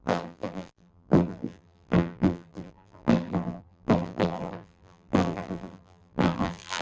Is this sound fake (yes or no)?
yes